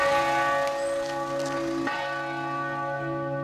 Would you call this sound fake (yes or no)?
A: no